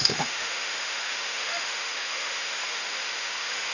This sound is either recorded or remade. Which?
remade